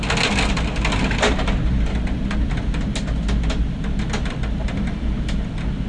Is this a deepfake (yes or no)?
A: no